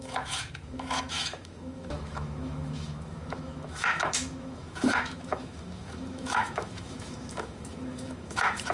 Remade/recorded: remade